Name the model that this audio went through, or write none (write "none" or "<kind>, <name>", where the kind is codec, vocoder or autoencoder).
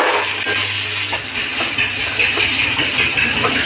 none